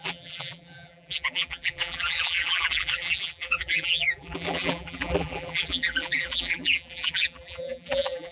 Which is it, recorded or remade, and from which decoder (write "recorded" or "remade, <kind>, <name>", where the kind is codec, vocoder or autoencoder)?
remade, vocoder, BigVGAN v2